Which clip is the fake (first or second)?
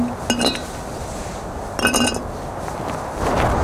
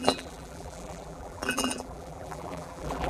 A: second